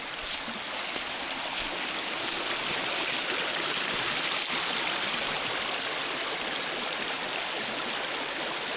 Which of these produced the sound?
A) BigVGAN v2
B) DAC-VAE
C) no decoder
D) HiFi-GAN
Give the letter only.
C